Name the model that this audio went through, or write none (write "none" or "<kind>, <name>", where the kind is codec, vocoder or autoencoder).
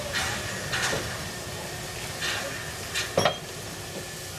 none